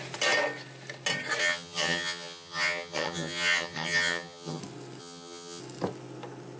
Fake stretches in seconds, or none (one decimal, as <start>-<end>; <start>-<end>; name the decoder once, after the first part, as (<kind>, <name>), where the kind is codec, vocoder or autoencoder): 1.4-4.6 (vocoder, HiFi-GAN); 5.0-5.6